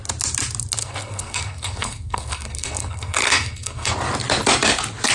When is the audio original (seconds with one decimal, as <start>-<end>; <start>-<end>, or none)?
0.0-0.8; 3.9-5.1